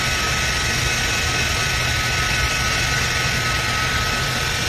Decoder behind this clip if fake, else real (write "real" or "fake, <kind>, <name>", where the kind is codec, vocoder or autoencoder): real